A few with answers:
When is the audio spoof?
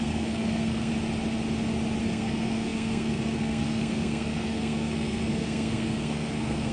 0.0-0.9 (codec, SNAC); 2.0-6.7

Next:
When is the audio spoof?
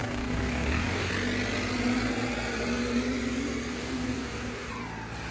0.0-1.1 (codec, DAC); 3.7-4.7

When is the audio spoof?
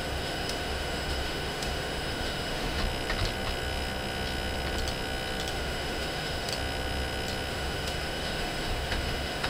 0.0-2.8 (autoencoder, DAC-VAE); 5.5-6.5; 7.5-9.5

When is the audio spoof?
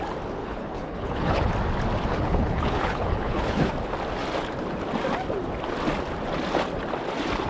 0.4-1.5 (codec, HILCodec); 2.1-3.7